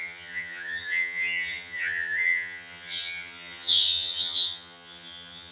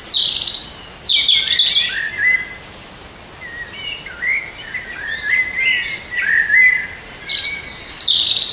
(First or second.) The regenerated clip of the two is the first